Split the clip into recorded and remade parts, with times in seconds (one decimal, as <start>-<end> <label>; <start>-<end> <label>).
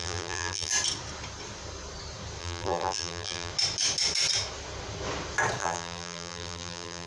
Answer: 0.0-0.7 remade; 0.7-2.4 recorded; 2.4-3.5 remade; 3.5-5.6 recorded; 5.6-7.1 remade